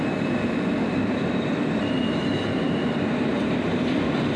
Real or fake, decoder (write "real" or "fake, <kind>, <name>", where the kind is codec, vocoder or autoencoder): real